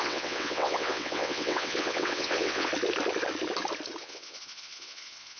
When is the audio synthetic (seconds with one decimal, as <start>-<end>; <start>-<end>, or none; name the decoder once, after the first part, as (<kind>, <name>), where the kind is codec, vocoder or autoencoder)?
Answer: 0.0-2.7 (vocoder, WaveNeXt); 4.0-5.4